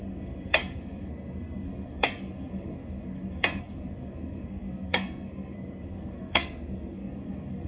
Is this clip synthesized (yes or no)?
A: yes